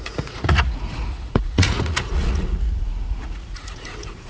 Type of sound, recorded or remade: remade